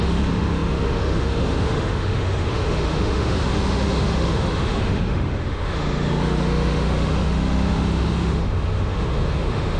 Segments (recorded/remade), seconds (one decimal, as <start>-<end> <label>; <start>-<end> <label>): 0.0-9.8 remade